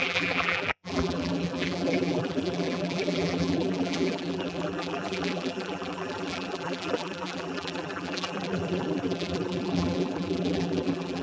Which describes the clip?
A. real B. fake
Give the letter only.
B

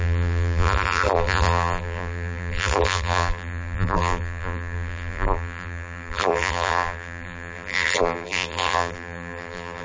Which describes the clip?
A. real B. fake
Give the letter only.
B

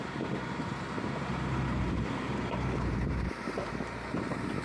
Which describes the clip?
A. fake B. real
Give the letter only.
A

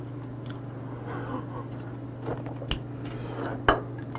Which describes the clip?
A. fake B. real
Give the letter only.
B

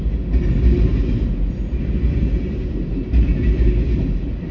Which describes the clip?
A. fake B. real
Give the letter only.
B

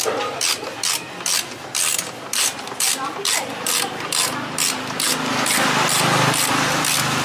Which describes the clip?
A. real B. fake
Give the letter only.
A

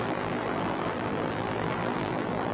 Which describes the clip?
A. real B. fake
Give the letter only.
B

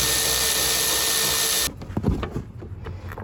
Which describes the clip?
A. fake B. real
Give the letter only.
B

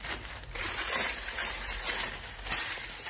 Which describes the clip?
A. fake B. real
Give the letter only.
A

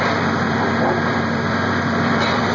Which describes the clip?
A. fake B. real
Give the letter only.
A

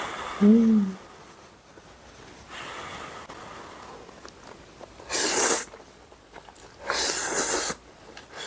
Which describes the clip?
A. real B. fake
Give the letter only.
A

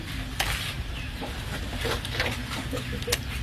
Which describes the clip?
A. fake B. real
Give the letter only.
B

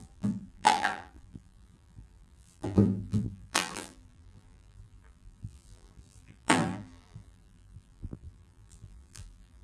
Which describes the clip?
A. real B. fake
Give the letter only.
B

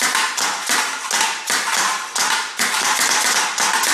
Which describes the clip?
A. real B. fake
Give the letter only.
A